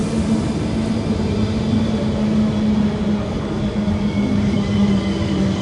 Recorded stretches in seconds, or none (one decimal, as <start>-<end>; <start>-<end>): 0.0-3.2